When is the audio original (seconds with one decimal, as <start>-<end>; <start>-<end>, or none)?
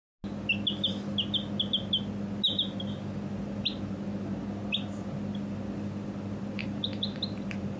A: 0.0-6.6